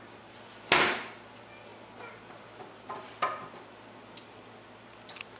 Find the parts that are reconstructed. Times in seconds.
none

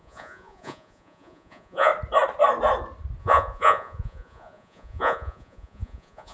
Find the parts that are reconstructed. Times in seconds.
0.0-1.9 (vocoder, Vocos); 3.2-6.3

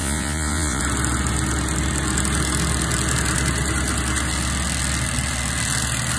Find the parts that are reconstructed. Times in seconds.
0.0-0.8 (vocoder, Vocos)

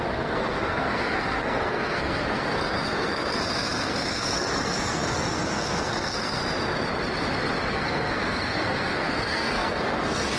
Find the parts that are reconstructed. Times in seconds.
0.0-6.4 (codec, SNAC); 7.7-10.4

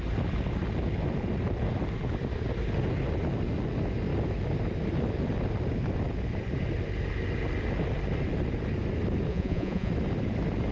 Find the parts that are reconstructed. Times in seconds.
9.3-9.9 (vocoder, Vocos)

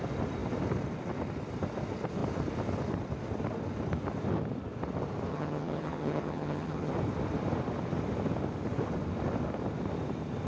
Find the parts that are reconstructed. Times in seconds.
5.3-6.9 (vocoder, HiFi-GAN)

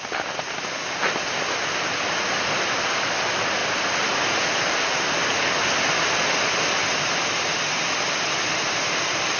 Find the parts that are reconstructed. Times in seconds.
none

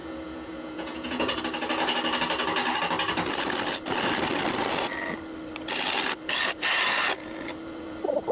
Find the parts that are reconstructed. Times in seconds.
0.0-1.4 (vocoder, Vocos)